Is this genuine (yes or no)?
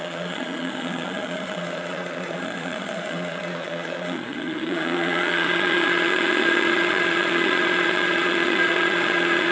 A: no